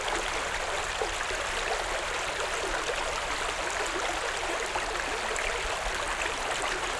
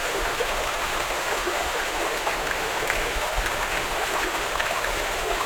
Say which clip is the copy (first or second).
second